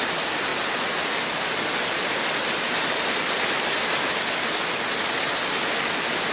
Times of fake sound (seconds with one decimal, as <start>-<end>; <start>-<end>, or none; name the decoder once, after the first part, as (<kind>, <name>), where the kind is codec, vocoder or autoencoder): none